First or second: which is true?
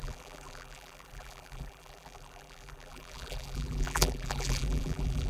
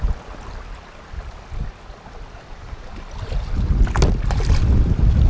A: second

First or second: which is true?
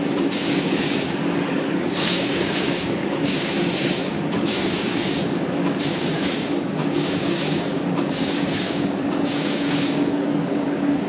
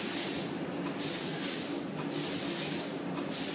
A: second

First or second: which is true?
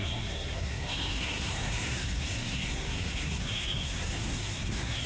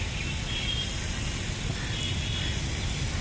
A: second